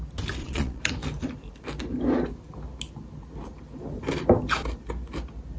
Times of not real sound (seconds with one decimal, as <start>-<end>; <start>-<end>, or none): 0.4-0.9